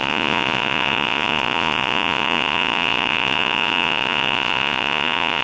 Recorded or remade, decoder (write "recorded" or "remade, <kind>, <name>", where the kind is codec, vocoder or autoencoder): remade, vocoder, Vocos